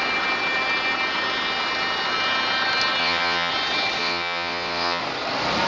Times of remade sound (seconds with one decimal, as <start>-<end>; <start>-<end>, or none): 3.0-3.5; 4.0-5.0